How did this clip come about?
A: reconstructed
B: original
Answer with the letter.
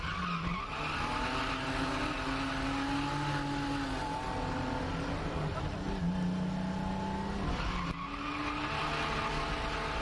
B